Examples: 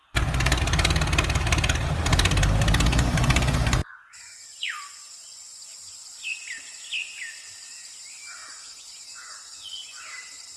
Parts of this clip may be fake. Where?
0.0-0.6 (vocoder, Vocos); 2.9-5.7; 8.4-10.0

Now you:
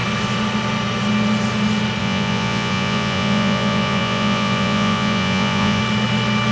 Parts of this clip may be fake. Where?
2.0-5.8 (vocoder, Vocos)

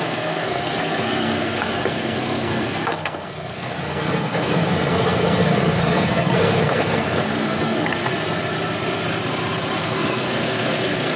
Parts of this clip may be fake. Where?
0.0-8.0 (codec, SNAC); 9.8-11.2

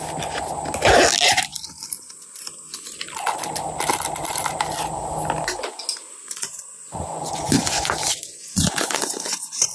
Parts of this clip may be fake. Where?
6.2-9.7 (vocoder, Vocos)

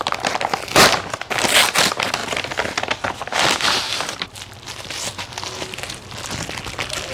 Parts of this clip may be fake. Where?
none